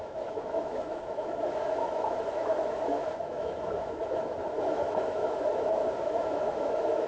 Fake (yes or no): yes